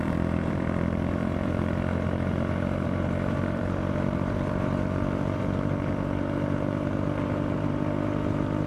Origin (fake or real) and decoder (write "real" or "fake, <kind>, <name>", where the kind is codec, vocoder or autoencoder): fake, vocoder, BigVGAN v2